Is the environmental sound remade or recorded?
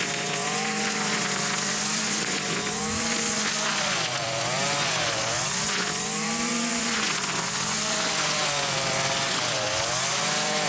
remade